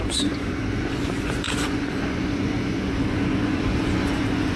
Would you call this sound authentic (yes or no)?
no